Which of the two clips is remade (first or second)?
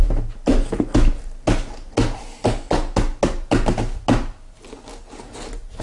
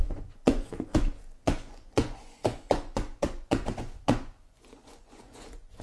second